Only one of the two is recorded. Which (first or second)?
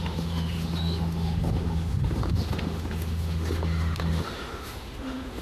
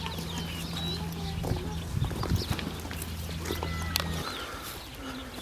second